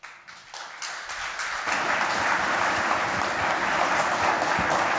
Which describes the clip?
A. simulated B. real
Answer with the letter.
B